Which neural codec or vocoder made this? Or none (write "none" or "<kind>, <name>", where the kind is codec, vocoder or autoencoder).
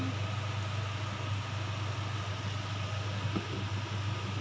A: none